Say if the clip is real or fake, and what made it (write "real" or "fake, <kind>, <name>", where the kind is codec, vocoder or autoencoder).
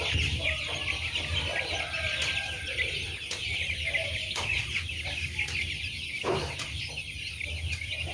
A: real